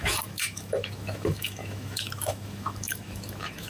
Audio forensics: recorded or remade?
remade